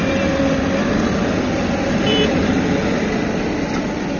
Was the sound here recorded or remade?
recorded